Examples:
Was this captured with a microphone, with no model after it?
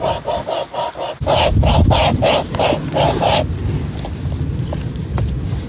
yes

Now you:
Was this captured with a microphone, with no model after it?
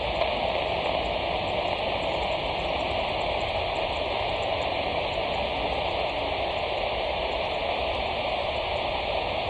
yes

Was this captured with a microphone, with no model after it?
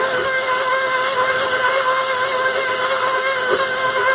no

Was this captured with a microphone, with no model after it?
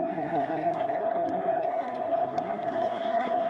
no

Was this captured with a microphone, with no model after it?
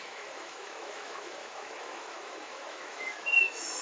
no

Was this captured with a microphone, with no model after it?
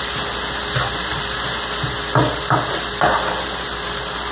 yes